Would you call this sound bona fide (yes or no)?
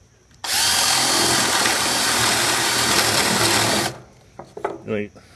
yes